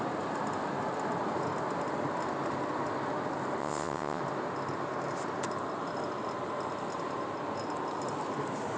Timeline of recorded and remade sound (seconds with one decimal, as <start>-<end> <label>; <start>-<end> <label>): 0.0-3.6 recorded; 3.6-4.2 remade; 4.2-8.8 recorded